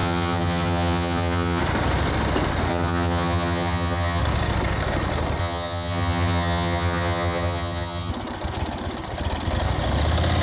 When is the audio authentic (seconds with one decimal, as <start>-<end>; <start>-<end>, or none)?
1.6-2.7; 4.2-5.4; 8.1-10.4